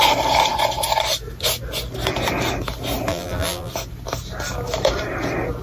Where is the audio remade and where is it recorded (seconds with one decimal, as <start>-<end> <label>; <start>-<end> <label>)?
0.0-3.1 recorded; 3.1-3.7 remade; 3.7-5.6 recorded